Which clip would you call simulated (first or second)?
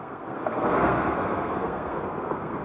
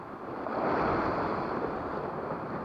first